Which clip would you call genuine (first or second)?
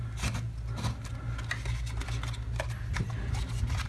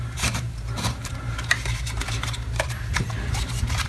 first